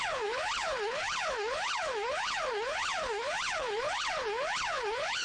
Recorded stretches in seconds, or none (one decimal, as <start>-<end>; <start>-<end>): none